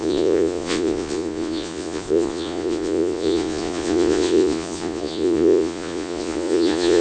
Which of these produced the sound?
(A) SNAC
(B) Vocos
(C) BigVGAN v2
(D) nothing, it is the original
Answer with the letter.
B